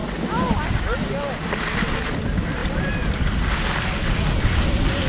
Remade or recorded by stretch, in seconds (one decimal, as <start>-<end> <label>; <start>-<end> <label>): 0.0-5.1 recorded